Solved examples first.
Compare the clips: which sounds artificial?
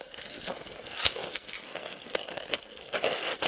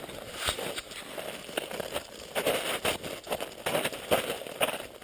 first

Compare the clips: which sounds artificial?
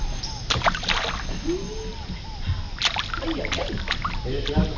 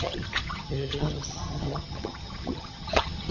second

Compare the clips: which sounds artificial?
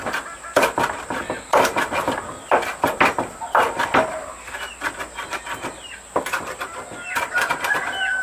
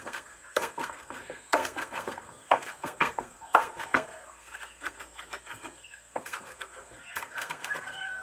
second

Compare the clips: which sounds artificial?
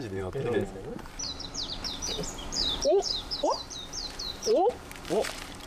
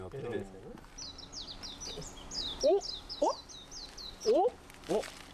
first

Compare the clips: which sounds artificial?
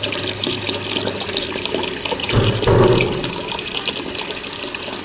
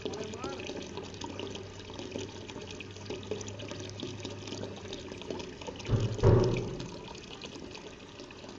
first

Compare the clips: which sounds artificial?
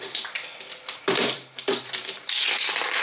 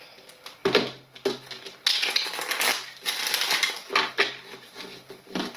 first